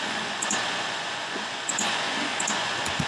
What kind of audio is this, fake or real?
fake